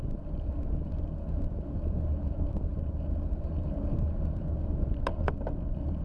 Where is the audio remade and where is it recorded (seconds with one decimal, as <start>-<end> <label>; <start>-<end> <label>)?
0.0-6.0 recorded